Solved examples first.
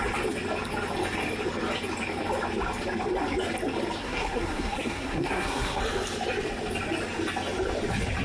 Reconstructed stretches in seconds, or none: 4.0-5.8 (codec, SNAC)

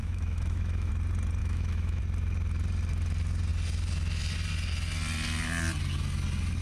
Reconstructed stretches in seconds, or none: 0.0-0.9 (autoencoder, DAC-VAE); 1.4-2.0

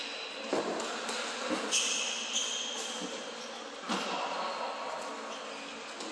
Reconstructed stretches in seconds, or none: none

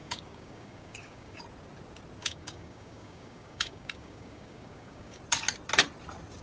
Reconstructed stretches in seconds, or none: 0.0-1.4 (codec, DAC); 2.2-5.2

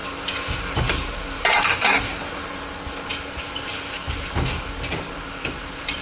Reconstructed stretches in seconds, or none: 0.8-6.0 (vocoder, BigVGAN v2)

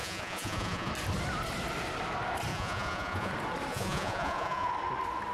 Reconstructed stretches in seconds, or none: 0.0-0.9 (vocoder, Vocos); 2.5-3.3; 3.7-4.7